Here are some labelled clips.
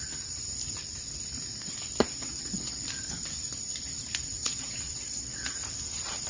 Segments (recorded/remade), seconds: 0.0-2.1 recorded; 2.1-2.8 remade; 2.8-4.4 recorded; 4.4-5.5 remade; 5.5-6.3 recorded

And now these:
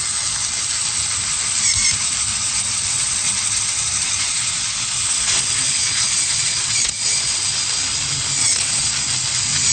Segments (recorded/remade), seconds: 0.0-2.3 recorded; 2.3-7.5 remade; 7.5-8.4 recorded; 8.4-8.9 remade; 8.9-9.7 recorded